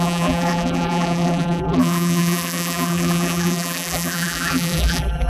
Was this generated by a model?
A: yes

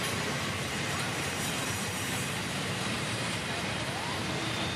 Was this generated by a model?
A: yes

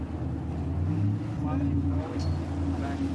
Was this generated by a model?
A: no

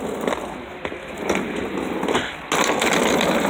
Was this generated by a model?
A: no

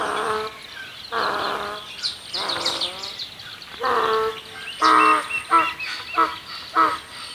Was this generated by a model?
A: no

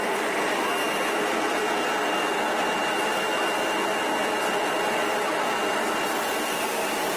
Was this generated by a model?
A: no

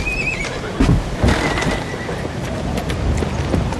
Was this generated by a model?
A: no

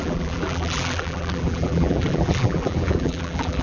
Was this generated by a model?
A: yes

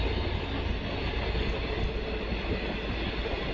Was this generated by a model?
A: no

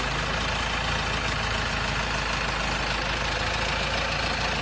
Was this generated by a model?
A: no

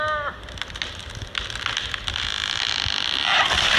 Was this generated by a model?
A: no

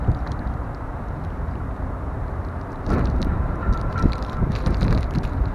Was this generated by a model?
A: yes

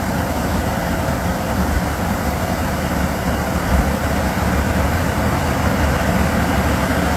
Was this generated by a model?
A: no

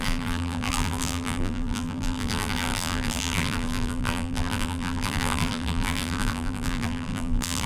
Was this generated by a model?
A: yes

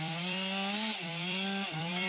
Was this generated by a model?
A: yes